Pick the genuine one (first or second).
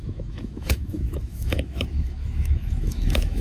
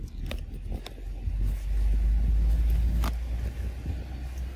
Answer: second